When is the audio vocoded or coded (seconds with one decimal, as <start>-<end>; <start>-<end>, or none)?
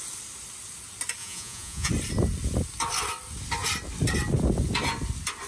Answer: 1.2-1.9